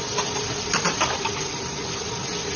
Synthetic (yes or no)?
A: no